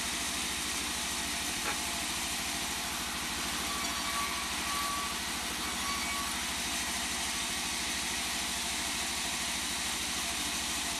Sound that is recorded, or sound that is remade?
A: recorded